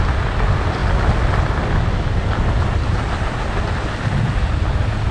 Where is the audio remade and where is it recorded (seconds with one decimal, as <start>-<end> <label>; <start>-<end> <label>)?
0.0-5.1 recorded